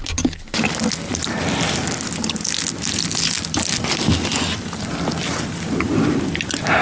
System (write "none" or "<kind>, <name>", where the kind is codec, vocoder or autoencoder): none